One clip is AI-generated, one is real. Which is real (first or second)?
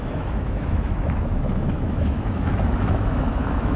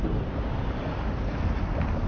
second